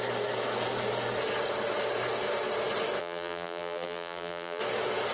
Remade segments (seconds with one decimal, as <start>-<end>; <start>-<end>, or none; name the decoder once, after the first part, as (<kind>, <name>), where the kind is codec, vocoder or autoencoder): 3.0-4.6 (vocoder, BigVGAN v2)